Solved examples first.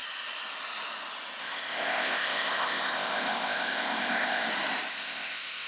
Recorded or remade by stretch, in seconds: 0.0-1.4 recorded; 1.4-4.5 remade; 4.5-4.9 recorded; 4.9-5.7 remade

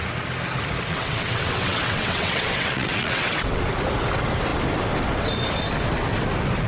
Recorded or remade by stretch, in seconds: 0.0-0.9 recorded; 0.9-3.6 remade; 3.6-6.7 recorded

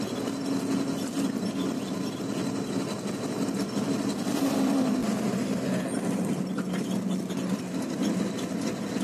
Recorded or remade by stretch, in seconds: 0.0-9.0 recorded

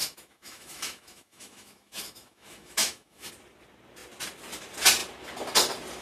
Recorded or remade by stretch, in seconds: 0.0-3.3 remade; 3.3-6.0 recorded

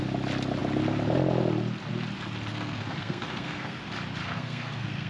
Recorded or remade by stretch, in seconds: 0.0-2.5 recorded; 2.5-3.8 remade; 3.8-4.2 recorded; 4.2-5.1 remade